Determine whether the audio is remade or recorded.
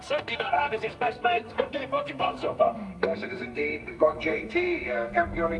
remade